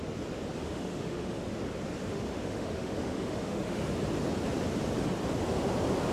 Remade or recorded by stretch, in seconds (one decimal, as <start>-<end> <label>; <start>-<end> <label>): 0.0-0.6 recorded; 0.6-1.4 remade; 1.4-2.1 recorded; 2.1-3.8 remade; 3.8-6.1 recorded